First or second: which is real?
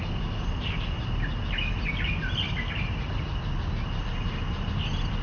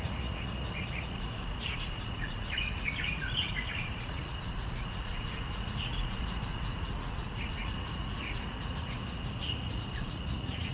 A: first